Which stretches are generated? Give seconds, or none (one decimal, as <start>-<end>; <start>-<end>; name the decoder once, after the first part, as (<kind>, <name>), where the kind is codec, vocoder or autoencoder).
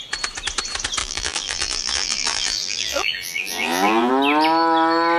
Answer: 1.0-4.1 (vocoder, BigVGAN v2)